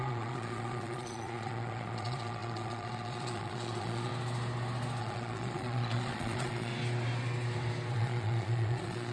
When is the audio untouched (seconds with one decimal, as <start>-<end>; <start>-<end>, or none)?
4.1-5.0; 6.7-7.9

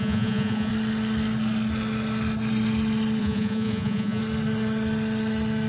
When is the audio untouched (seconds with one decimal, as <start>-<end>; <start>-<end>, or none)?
0.7-3.2; 4.2-5.7

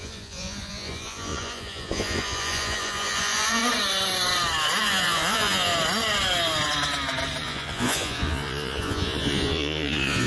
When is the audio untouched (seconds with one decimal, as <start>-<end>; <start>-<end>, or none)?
3.6-4.8; 5.7-7.4

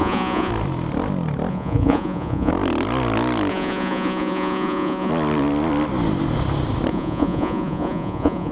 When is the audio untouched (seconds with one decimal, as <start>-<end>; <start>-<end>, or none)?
0.5-1.5; 2.5-3.5; 5.1-6.9

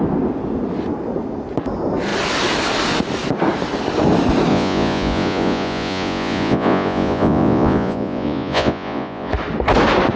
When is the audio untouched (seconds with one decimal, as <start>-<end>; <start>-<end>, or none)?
0.0-4.5; 9.3-10.2

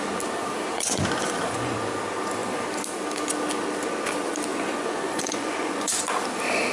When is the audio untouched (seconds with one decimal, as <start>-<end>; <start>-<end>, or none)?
0.0-0.7; 1.8-4.5; 6.0-6.7

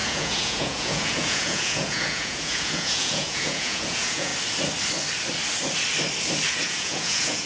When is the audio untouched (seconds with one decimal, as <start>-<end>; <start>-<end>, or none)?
4.3-6.5

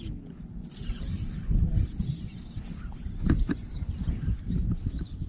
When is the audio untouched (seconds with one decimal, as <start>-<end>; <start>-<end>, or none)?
0.0-5.3